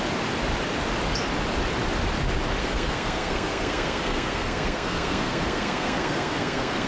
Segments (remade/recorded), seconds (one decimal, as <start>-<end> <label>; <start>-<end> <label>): 0.0-2.6 recorded; 2.6-6.9 remade